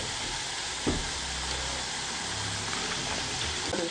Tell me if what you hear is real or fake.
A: real